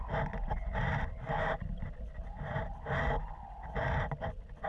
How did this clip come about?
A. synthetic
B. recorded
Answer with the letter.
B